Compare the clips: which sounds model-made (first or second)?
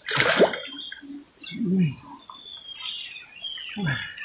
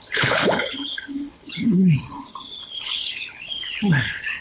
second